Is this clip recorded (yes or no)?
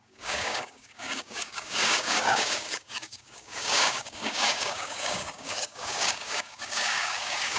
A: no